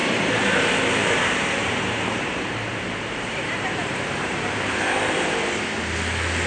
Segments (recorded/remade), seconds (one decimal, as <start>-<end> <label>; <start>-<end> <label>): 0.0-0.6 remade; 0.6-1.0 recorded; 1.0-4.9 remade; 4.9-6.5 recorded